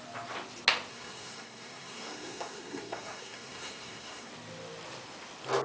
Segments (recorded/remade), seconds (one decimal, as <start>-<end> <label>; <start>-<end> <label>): 0.0-0.9 recorded; 0.9-4.3 remade; 4.3-5.6 recorded